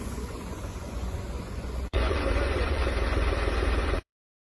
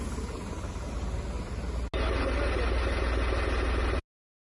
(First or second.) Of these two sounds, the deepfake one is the first